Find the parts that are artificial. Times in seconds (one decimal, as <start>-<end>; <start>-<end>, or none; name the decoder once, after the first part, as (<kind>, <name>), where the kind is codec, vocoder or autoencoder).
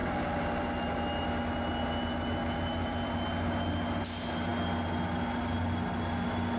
none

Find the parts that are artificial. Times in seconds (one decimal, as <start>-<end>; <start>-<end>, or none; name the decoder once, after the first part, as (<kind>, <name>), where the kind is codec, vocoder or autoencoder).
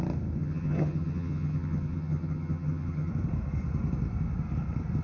0.4-3.1 (vocoder, HiFi-GAN)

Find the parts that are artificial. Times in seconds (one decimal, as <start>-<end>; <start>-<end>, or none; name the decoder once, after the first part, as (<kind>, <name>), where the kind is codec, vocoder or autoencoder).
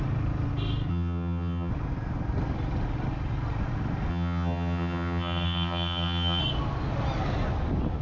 0.9-1.7 (vocoder, HiFi-GAN); 4.1-6.4